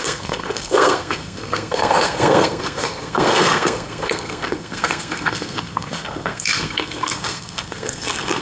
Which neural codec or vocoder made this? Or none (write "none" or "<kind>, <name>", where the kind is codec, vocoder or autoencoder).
codec, SNAC